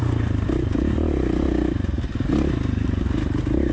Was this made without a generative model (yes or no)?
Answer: yes